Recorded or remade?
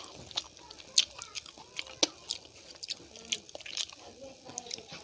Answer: recorded